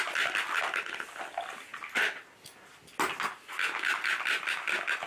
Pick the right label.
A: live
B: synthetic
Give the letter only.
A